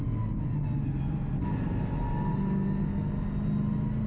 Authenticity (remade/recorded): recorded